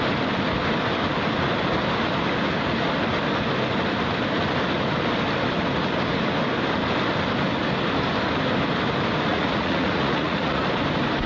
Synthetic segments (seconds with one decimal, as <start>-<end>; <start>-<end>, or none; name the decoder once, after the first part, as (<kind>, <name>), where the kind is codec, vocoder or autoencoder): 9.3-10.6 (vocoder, Vocos)

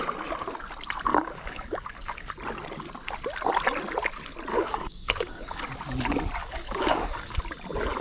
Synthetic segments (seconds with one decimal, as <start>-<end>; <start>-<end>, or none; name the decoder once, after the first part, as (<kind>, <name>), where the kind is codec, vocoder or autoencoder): 1.1-2.3 (codec, DAC); 4.5-5.6; 6.4-7.4